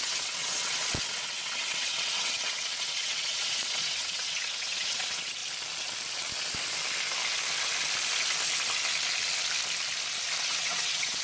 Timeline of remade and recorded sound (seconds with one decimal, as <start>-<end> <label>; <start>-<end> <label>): 0.0-5.4 remade; 5.4-10.4 recorded; 10.4-11.2 remade